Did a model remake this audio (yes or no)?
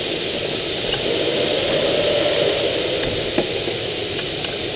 no